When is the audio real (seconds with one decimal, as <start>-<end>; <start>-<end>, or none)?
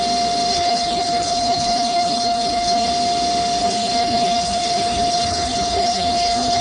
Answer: 0.0-0.5; 2.9-3.6